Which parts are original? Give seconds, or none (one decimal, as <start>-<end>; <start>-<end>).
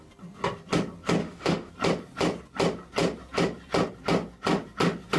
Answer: 0.0-1.2; 1.7-5.2